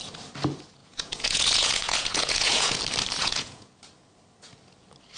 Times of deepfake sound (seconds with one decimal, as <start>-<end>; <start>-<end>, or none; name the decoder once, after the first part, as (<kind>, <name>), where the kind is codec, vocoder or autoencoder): 0.8-2.8 (vocoder, Vocos); 3.2-3.7